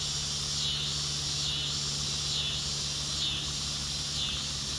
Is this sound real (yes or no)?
yes